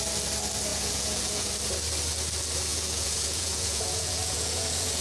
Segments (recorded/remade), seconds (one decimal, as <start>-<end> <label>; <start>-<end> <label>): 0.0-0.7 recorded; 0.7-1.5 remade; 1.5-2.7 recorded; 2.7-5.0 remade